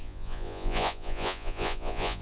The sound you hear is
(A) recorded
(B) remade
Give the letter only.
B